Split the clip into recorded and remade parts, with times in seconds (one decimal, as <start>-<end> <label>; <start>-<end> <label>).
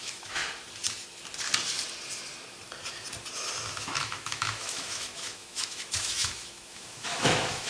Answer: 0.0-0.4 remade; 0.4-3.7 recorded; 3.7-7.7 remade